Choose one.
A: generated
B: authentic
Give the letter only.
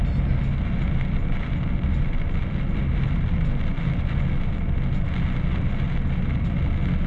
B